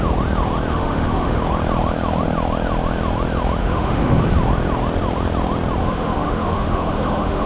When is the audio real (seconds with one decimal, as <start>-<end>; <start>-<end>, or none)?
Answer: 0.0-0.7; 1.4-3.6; 4.2-5.8